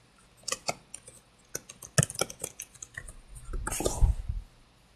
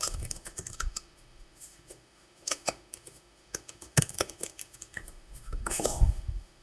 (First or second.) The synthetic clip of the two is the second